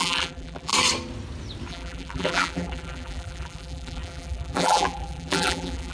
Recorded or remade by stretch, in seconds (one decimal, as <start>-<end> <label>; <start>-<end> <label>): 0.0-0.7 remade; 0.7-1.7 recorded; 1.7-5.9 remade